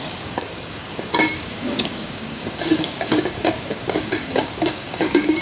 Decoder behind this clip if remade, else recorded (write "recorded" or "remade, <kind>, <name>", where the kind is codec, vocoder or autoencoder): remade, codec, DAC